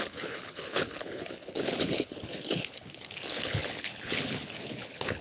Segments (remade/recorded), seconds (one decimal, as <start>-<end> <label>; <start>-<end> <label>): 0.0-5.2 remade